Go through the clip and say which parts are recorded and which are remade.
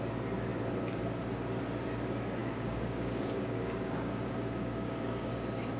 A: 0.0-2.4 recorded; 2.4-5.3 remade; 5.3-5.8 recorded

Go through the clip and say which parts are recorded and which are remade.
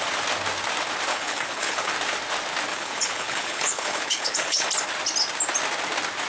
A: 0.0-1.1 recorded; 1.1-1.9 remade; 1.9-2.7 recorded; 2.7-4.7 remade; 4.7-6.3 recorded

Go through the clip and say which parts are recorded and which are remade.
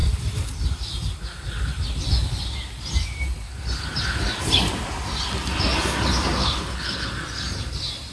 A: 0.0-6.4 recorded; 6.4-7.1 remade; 7.1-8.1 recorded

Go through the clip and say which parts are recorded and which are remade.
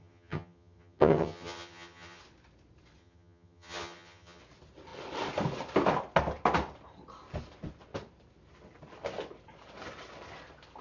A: 0.0-2.2 remade; 2.2-3.0 recorded; 3.0-4.4 remade; 4.4-10.8 recorded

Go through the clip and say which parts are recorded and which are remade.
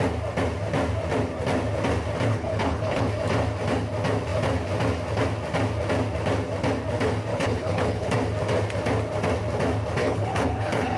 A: 0.0-2.3 recorded; 2.3-3.1 remade; 3.1-7.3 recorded; 7.3-8.1 remade; 8.1-10.0 recorded; 10.0-11.0 remade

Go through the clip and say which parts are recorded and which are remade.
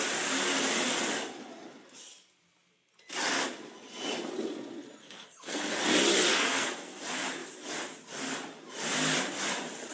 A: 0.0-5.0 recorded; 5.0-5.7 remade; 5.7-6.3 recorded; 6.3-7.0 remade; 7.0-9.9 recorded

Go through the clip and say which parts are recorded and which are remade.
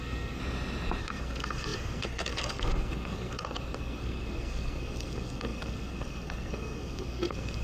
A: 0.0-0.4 remade; 0.4-1.0 recorded; 1.0-7.6 remade